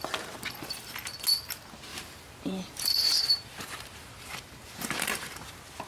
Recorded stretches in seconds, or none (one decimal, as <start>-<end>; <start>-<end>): 0.0-1.9; 5.4-5.9